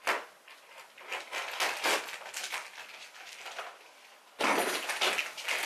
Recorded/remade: recorded